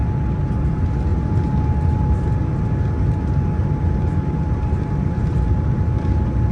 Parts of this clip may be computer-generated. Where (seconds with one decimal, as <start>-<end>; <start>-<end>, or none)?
none